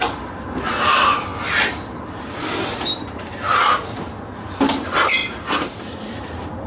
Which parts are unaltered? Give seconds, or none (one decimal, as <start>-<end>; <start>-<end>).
1.3-2.0; 3.3-4.6